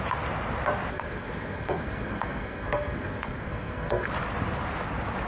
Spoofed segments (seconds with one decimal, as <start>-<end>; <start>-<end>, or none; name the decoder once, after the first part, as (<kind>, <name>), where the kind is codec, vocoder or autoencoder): 0.9-4.1 (codec, SNAC)

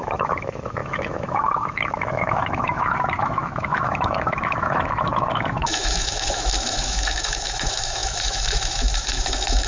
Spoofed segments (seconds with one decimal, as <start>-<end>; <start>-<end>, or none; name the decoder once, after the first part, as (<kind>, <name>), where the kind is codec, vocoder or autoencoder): 0.0-9.7 (autoencoder, DAC-VAE)

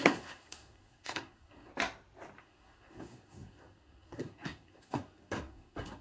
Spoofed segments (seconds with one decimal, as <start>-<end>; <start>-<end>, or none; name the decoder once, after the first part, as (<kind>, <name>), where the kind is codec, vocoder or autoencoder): 0.0-1.7 (codec, SNAC); 2.4-6.0